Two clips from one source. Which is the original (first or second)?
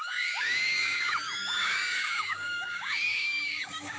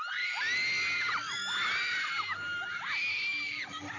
second